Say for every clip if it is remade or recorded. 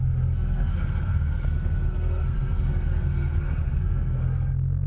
remade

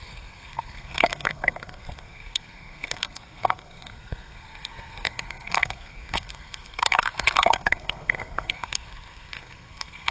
remade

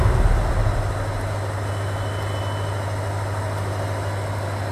recorded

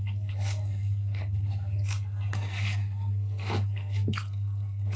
remade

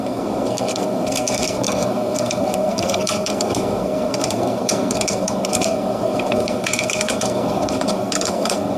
remade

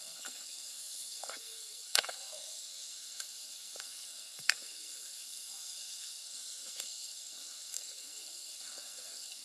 remade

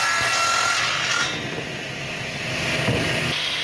recorded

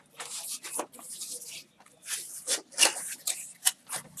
recorded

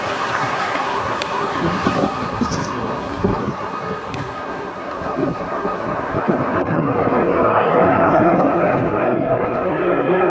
remade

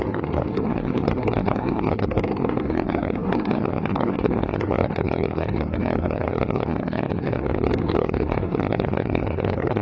remade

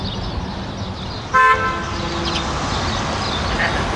recorded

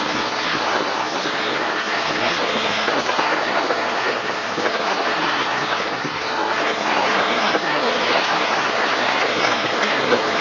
remade